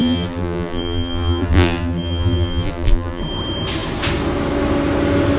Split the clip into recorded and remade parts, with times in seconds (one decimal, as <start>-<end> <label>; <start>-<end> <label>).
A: 0.0-3.2 remade; 3.2-5.4 recorded